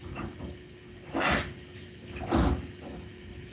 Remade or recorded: recorded